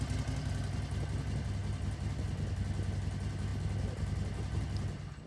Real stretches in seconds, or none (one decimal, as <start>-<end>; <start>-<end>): 0.0-5.3